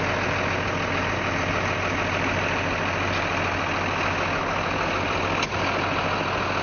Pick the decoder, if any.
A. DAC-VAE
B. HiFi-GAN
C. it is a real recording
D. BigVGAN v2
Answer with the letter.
C